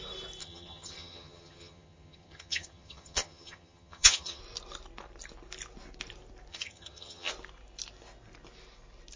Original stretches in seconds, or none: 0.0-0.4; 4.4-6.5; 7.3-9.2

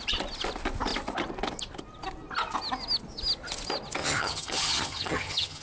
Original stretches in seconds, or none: 0.0-4.0

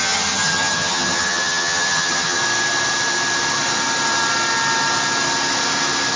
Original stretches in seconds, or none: 2.4-6.2

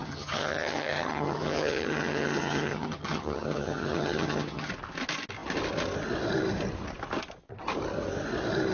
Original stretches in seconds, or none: 4.7-8.7